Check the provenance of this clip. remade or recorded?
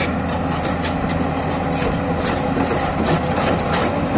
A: recorded